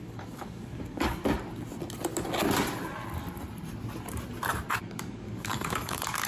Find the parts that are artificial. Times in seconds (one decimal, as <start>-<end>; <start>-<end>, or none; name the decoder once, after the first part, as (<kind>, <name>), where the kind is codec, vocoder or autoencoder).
0.0-1.2 (codec, DAC); 4.8-6.3